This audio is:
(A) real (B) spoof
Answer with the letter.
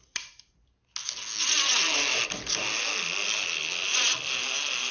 A